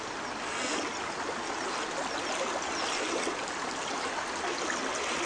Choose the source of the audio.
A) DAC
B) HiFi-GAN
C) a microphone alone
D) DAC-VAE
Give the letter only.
C